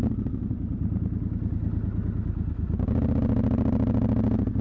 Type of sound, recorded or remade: recorded